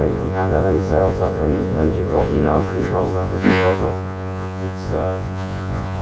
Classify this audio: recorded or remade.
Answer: remade